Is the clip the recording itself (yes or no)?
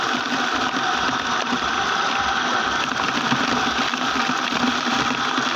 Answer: yes